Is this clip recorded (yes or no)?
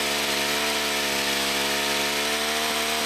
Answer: yes